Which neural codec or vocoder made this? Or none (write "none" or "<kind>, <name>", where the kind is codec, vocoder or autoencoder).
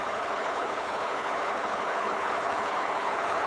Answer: codec, HILCodec